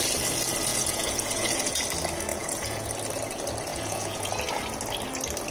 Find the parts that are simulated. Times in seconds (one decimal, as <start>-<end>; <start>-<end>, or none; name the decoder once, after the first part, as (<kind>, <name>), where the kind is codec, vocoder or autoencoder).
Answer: 0.7-1.8 (vocoder, Vocos); 2.3-2.9; 3.7-4.3